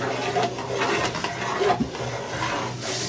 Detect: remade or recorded recorded